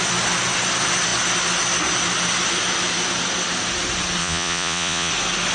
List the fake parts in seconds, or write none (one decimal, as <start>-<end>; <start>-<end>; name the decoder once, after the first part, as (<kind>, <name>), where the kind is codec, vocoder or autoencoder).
4.2-5.1 (vocoder, Vocos)